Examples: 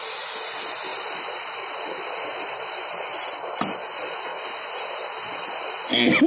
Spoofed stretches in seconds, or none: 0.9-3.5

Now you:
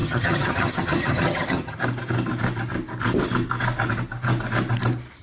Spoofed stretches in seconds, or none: 0.0-1.8

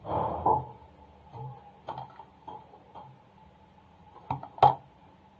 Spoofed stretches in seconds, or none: none

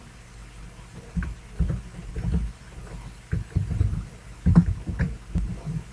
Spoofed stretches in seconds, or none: none

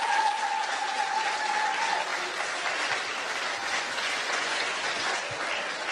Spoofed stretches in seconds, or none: 3.6-5.2